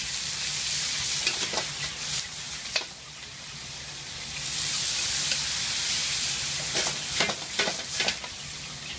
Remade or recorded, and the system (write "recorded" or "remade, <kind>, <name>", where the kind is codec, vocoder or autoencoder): recorded